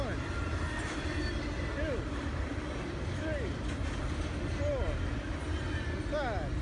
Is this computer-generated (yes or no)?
no